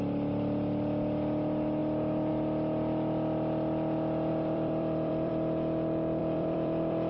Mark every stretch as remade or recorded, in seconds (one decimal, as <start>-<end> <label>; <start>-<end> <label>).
0.0-4.3 recorded; 4.3-5.3 remade; 5.3-6.2 recorded; 6.2-7.1 remade